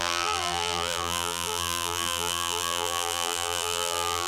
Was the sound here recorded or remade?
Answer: remade